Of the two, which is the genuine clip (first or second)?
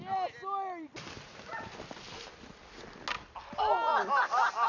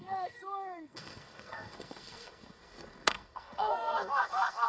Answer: first